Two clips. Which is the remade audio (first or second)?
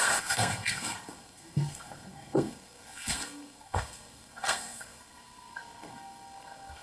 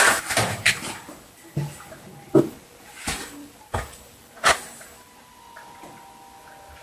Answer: first